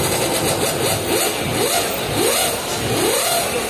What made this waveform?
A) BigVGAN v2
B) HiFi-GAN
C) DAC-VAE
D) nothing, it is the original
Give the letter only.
D